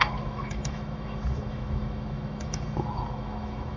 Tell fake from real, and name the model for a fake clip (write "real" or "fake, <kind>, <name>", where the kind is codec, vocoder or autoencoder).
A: fake, autoencoder, DAC-VAE